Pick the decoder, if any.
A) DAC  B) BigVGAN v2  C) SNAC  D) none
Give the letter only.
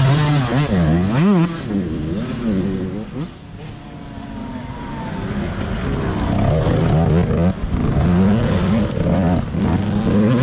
D